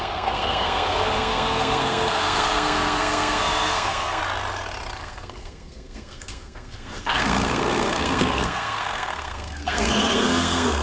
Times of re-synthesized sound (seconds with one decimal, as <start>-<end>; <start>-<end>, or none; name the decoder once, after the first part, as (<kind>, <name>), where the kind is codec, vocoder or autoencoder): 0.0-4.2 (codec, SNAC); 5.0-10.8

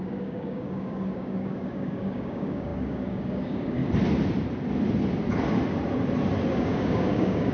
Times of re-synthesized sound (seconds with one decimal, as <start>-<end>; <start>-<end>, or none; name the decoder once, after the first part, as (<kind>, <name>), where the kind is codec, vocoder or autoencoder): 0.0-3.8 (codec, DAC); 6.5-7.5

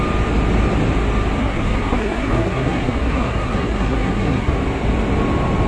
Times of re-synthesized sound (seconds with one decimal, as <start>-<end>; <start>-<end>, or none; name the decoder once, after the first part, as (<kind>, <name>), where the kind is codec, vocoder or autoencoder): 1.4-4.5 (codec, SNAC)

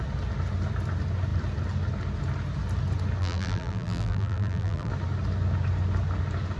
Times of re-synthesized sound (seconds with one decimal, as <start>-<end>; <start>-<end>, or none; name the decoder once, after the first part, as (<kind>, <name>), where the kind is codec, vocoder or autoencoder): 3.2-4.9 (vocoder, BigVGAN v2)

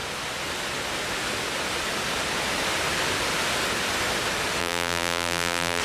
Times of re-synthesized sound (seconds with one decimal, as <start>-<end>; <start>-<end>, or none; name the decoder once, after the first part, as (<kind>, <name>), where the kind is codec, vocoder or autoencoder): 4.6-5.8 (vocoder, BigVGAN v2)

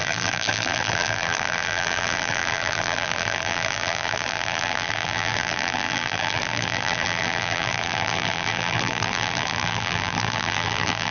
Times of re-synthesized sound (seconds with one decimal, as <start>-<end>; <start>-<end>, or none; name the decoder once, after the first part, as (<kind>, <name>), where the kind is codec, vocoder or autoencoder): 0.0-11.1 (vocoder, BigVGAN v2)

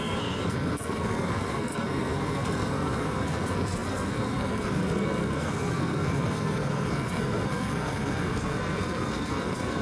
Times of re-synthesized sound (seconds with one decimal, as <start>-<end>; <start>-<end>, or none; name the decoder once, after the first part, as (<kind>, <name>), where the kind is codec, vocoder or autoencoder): 0.0-9.8 (codec, SNAC)